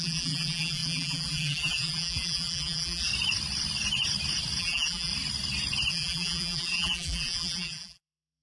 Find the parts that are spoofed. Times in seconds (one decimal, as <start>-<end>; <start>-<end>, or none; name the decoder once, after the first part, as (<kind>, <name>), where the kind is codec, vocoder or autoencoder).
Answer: 0.0-3.1 (vocoder, BigVGAN v2); 4.6-5.1; 5.9-8.4